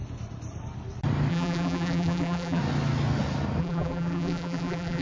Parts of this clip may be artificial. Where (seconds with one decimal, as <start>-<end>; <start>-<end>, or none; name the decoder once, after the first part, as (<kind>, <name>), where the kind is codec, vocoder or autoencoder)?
1.3-2.6 (vocoder, BigVGAN v2); 3.6-5.0